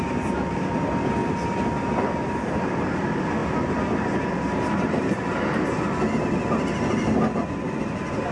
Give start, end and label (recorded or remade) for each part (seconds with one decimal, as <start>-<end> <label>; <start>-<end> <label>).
0.0-8.3 recorded